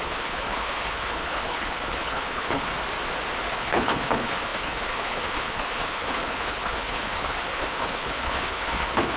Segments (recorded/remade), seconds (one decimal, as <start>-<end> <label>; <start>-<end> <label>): 0.0-2.7 remade; 2.7-3.5 recorded; 3.5-9.2 remade